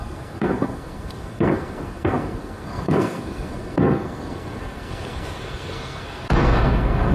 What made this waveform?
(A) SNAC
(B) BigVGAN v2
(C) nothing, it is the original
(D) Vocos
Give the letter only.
A